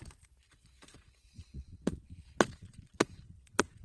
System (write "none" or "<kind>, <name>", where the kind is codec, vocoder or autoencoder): vocoder, Vocos